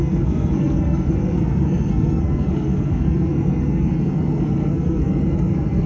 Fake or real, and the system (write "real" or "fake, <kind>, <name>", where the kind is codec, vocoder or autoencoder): fake, codec, SNAC